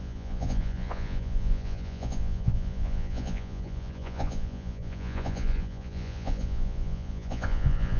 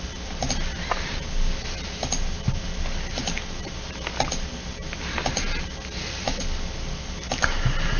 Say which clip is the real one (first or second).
second